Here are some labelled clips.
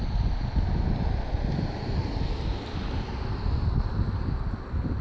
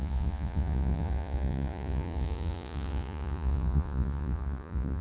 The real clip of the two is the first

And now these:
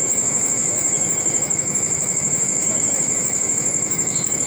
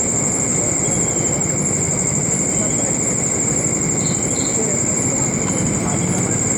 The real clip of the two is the second